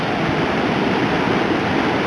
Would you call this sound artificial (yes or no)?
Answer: no